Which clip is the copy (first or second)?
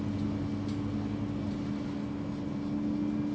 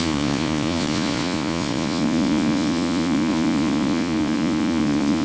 second